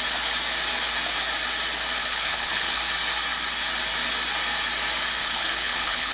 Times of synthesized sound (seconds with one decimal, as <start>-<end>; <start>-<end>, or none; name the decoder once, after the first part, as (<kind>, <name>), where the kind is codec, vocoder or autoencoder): 2.0-2.8 (codec, HILCodec); 5.2-6.1